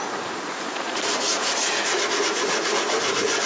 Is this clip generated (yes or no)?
yes